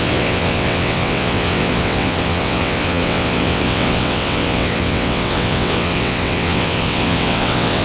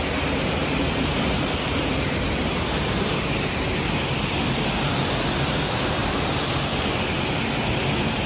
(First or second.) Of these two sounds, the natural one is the second